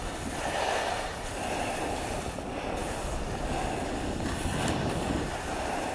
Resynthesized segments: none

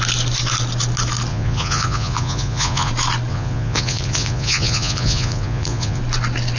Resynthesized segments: 1.3-2.9 (vocoder, Vocos); 3.3-6.0

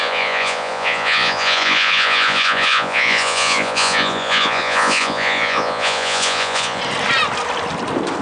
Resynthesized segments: 0.0-6.8 (vocoder, Vocos)

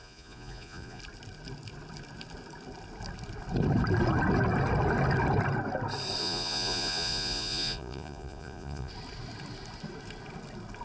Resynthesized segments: 0.0-1.0 (vocoder, Vocos); 6.2-8.9

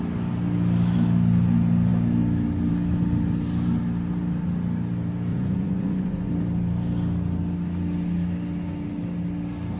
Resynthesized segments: 5.3-6.3 (vocoder, Vocos)

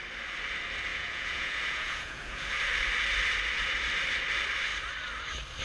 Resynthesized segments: 0.9-2.5 (vocoder, Vocos)

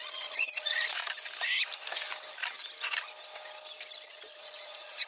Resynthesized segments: 0.0-1.0 (vocoder, Vocos); 4.1-5.1

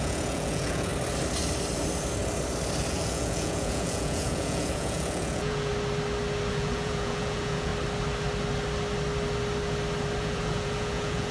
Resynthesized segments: 0.0-0.9 (vocoder, Vocos); 2.9-5.7; 6.5-7.7; 10.2-11.3